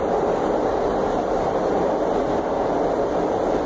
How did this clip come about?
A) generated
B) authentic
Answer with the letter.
B